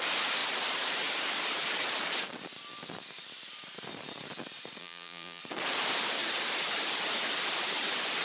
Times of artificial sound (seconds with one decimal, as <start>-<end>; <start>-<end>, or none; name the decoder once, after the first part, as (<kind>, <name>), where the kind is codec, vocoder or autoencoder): 4.8-5.4 (vocoder, BigVGAN v2)